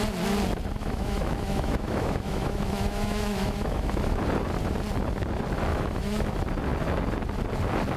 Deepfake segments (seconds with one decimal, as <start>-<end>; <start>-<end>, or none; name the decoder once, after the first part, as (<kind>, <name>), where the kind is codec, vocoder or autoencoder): 0.8-4.2 (autoencoder, DAC-VAE); 5.7-6.3